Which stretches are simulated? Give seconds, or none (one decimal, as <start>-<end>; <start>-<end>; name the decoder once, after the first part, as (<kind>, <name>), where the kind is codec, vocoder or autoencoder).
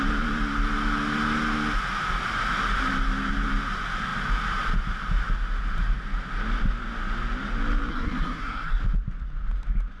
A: 7.9-8.8 (codec, SNAC)